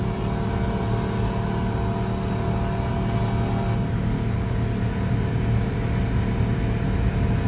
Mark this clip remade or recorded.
recorded